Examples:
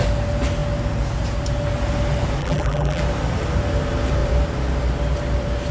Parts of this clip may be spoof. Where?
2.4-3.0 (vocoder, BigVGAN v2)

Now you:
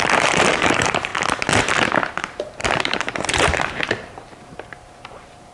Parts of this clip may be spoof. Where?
0.0-1.1 (vocoder, BigVGAN v2); 2.1-5.5